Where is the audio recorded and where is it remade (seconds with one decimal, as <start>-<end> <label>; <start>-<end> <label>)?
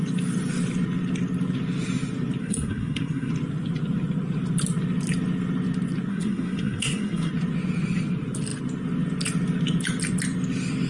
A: 0.0-2.4 recorded; 2.4-3.3 remade; 3.3-6.1 recorded; 6.1-7.3 remade; 7.3-10.9 recorded